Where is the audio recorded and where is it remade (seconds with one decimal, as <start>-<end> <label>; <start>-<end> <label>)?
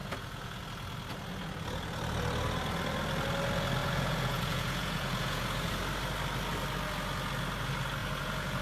0.0-0.6 remade; 0.6-3.8 recorded; 3.8-5.7 remade; 5.7-8.0 recorded; 8.0-8.6 remade